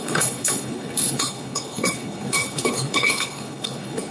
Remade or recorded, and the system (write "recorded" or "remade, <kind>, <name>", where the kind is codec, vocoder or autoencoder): remade, codec, HILCodec